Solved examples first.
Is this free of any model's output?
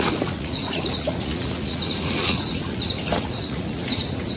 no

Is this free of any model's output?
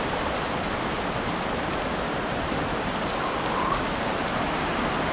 yes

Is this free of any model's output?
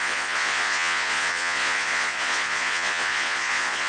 no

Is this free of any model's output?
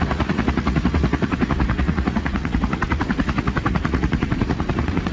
no